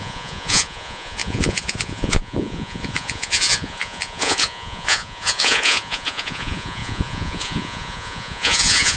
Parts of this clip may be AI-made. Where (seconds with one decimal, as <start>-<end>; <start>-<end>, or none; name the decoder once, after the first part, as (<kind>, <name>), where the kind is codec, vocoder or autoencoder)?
0.0-9.0 (vocoder, Vocos)